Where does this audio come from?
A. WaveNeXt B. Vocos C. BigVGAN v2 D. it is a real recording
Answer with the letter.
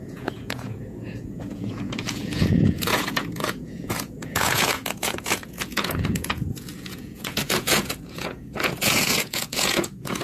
B